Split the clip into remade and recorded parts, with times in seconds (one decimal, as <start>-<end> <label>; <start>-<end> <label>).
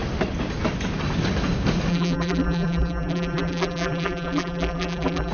0.0-1.9 recorded; 1.9-5.3 remade